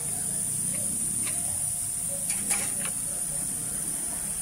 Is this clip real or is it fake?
fake